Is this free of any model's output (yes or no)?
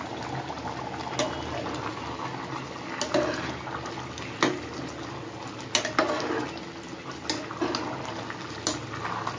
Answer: yes